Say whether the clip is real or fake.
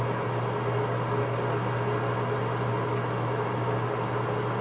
real